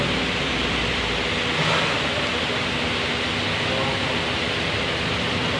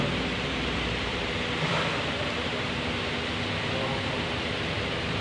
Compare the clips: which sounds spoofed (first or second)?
second